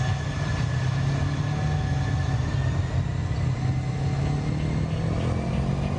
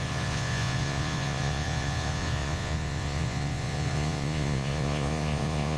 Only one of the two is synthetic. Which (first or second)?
second